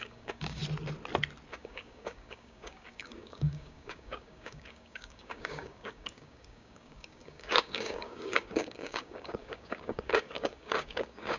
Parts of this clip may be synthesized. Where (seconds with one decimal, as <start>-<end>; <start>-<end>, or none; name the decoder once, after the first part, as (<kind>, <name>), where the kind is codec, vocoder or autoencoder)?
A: 0.0-0.6 (codec, DAC); 1.5-11.4